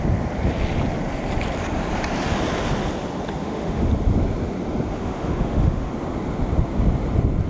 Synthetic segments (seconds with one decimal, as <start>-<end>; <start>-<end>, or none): 3.4-3.9; 4.9-5.9